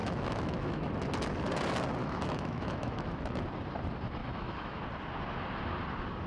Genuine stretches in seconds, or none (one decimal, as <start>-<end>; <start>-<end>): 0.9-2.0; 3.2-4.2; 4.8-6.3